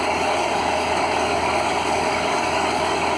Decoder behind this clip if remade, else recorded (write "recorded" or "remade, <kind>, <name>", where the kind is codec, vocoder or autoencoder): remade, codec, DAC